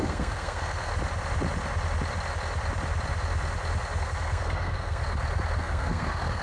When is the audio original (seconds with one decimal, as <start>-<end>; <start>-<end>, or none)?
0.9-4.0; 5.0-5.6

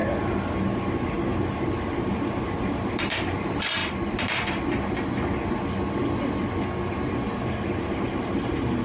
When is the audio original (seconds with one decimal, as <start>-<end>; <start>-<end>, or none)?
0.0-1.8; 3.8-7.4